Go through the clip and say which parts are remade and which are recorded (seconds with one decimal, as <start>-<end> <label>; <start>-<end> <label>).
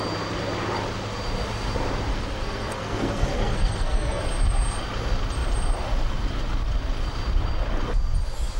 0.0-2.1 recorded; 2.1-4.2 remade; 4.2-8.6 recorded